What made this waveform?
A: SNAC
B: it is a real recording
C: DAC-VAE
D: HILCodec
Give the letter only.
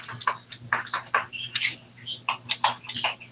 B